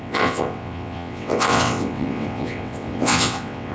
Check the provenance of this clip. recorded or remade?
remade